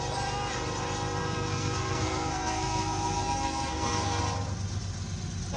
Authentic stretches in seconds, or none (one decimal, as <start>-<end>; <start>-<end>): 0.0-1.2; 4.2-5.6